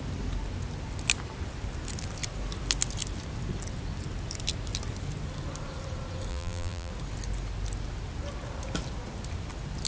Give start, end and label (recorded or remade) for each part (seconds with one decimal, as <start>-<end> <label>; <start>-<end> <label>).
0.0-6.3 recorded; 6.3-6.9 remade; 6.9-9.9 recorded